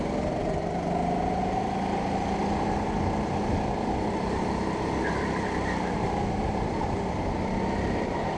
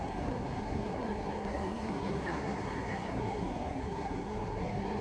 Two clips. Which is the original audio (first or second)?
first